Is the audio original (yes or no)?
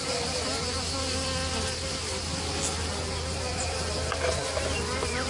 yes